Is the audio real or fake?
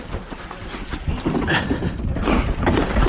fake